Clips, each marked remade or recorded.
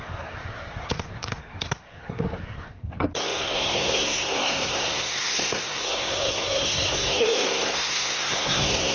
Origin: remade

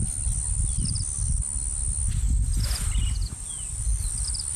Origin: recorded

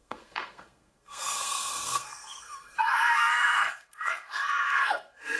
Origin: remade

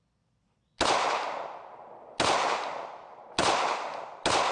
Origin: recorded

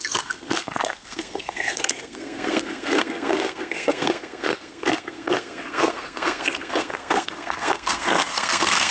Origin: remade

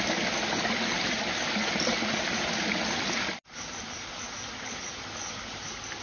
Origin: recorded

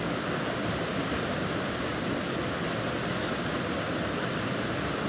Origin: recorded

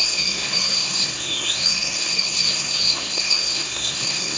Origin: remade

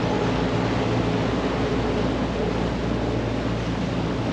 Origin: recorded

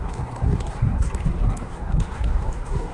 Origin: remade